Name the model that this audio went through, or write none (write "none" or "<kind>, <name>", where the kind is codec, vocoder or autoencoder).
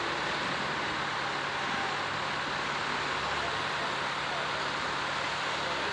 none